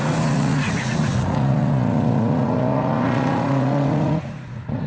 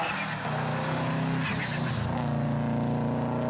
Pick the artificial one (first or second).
first